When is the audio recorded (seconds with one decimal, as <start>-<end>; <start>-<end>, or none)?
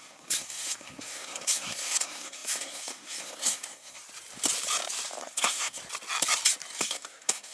4.0-5.2; 5.8-6.8